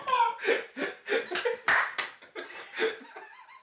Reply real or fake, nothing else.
fake